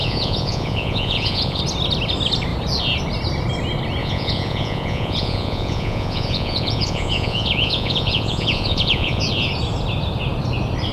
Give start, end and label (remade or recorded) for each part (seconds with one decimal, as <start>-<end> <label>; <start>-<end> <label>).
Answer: 0.0-1.6 remade; 1.6-4.0 recorded; 4.0-9.2 remade; 9.2-10.9 recorded